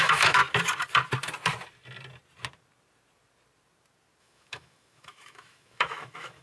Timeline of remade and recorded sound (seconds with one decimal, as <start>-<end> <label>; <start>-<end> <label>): 0.0-0.4 remade; 0.4-4.2 recorded; 4.2-6.4 remade

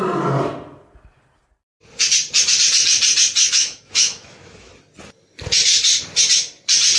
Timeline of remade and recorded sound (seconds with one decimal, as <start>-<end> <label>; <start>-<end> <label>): 0.0-3.4 recorded; 3.4-4.7 remade; 4.7-7.0 recorded

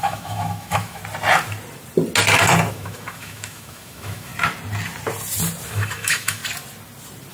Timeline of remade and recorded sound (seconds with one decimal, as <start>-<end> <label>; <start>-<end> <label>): 0.0-1.0 remade; 1.0-2.7 recorded; 2.7-4.3 remade; 4.3-5.7 recorded; 5.7-6.4 remade; 6.4-7.3 recorded

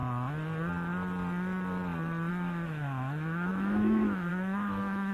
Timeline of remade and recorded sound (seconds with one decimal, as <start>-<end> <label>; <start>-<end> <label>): 0.0-2.3 recorded; 2.3-5.1 remade